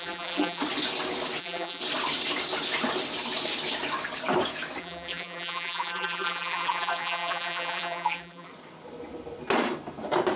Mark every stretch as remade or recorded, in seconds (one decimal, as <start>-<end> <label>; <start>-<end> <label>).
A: 0.0-0.6 remade; 0.6-1.4 recorded; 1.4-1.8 remade; 1.8-4.8 recorded; 4.8-8.5 remade; 8.5-10.4 recorded